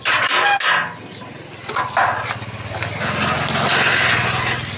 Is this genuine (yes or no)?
yes